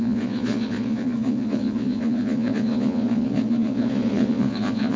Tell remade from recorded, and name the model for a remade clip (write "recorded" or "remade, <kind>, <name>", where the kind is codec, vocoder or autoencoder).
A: remade, vocoder, Vocos